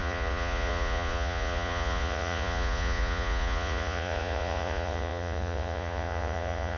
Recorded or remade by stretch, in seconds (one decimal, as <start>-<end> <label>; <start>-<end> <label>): 0.0-6.8 remade